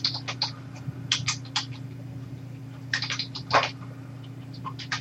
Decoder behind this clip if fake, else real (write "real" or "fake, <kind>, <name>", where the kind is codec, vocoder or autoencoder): real